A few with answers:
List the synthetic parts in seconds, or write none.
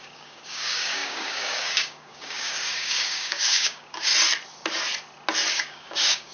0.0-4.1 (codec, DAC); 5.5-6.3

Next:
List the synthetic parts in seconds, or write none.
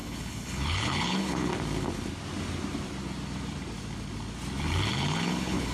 0.0-1.5 (codec, HILCodec); 4.9-5.7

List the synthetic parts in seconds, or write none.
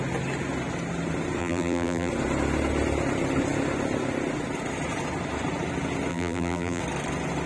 1.4-2.1 (vocoder, BigVGAN v2); 6.1-6.8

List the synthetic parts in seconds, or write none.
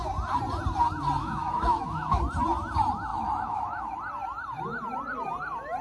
1.2-2.2 (autoencoder, DAC-VAE); 3.1-4.0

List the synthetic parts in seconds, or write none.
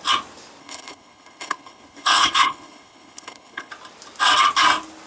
0.6-3.7 (codec, HILCodec)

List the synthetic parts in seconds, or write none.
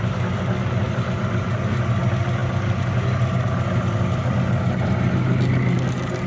none